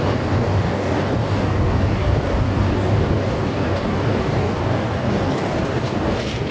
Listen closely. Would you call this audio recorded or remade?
remade